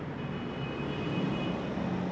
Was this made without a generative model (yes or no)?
yes